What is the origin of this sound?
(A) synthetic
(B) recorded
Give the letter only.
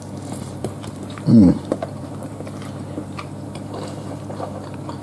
A